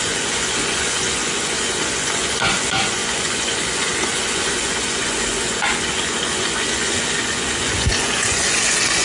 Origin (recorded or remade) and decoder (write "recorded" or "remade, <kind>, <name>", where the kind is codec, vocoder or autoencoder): remade, vocoder, Vocos